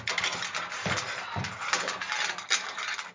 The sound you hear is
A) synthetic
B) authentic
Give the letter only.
B